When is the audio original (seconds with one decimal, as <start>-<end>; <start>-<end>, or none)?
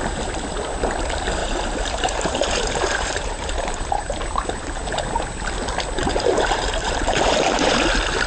0.0-1.4; 4.9-6.0; 7.7-8.3